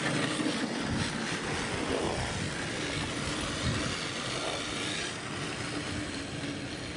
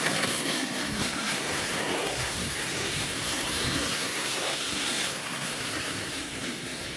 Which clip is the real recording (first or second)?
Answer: first